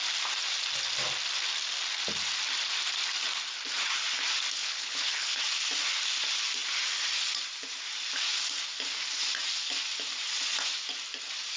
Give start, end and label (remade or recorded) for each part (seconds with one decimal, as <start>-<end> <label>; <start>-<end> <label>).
0.0-4.6 recorded; 4.6-5.4 remade; 5.4-11.6 recorded